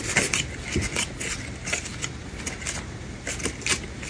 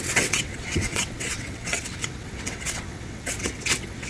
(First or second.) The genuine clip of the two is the first